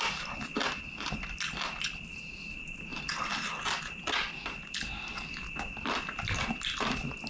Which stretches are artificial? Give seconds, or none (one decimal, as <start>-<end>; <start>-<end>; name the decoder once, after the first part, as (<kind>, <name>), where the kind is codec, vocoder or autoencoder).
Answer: none